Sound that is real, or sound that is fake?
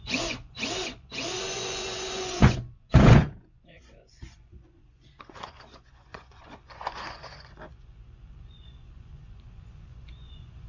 fake